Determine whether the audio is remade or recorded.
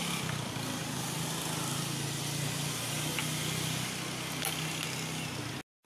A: recorded